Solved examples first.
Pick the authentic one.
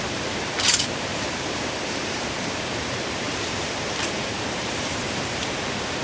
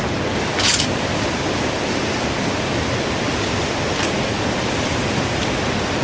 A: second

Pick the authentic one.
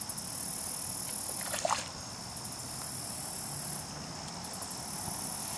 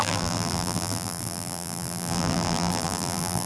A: first